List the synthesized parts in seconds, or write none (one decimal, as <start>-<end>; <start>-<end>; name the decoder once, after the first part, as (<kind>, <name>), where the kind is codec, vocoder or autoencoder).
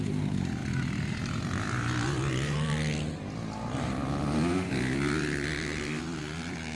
none